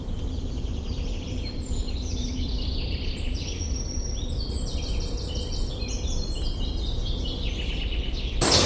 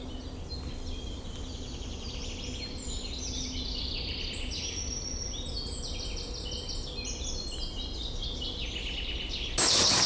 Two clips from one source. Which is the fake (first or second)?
first